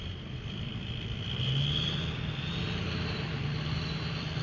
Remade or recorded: remade